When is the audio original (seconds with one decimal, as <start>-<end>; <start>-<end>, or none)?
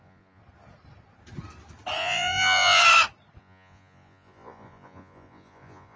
0.4-2.0; 2.8-3.4